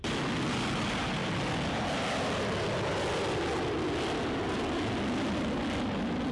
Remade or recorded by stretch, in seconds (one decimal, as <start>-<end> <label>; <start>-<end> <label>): 0.0-6.3 recorded